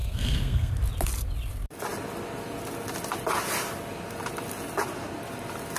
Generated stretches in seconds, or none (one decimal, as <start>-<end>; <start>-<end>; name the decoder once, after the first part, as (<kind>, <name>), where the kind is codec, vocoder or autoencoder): 0.0-0.7 (codec, SNAC)